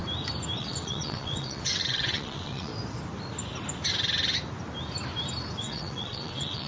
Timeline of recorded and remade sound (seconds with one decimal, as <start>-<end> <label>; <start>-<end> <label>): 0.0-0.6 recorded; 0.6-2.7 remade; 2.7-5.6 recorded; 5.6-6.7 remade